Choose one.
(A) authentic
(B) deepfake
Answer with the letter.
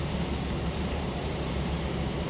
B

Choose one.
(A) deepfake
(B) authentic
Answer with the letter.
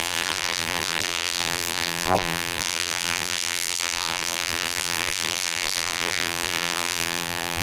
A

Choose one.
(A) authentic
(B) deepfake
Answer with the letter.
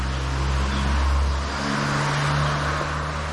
A